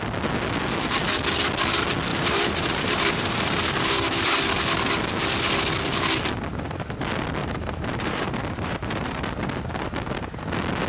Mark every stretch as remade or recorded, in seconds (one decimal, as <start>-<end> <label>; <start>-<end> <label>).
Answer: 0.0-2.1 recorded; 2.1-4.3 remade; 4.3-7.4 recorded; 7.4-9.4 remade; 9.4-10.9 recorded